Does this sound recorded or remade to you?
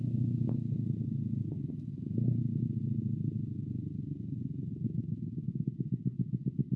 recorded